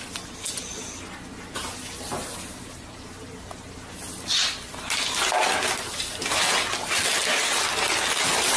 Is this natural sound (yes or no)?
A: yes